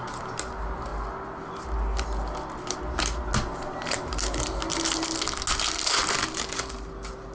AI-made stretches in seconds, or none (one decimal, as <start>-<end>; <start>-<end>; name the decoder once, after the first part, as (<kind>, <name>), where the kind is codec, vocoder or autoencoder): none